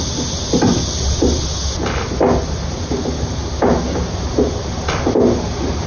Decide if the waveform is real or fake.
real